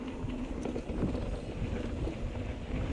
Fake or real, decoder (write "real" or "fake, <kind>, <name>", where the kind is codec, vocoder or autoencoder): real